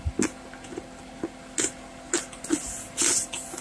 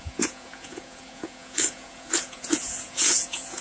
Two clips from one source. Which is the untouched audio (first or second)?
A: first